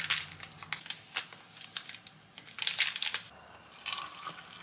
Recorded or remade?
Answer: recorded